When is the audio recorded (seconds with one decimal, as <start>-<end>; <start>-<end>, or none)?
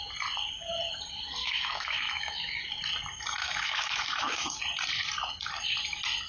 0.0-1.4; 2.6-3.4; 4.6-6.3